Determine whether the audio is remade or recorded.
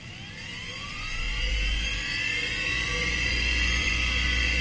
remade